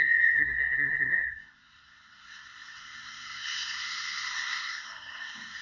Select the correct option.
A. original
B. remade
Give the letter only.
B